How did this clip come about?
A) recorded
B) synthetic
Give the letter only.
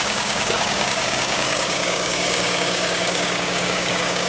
B